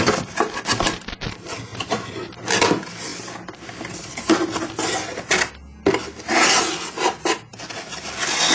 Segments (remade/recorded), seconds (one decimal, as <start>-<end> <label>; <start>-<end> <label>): 0.0-1.7 recorded; 1.7-2.4 remade; 2.4-8.5 recorded